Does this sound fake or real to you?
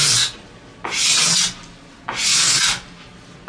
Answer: real